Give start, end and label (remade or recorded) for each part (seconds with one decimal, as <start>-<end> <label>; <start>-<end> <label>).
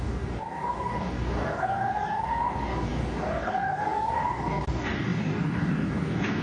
0.0-6.4 remade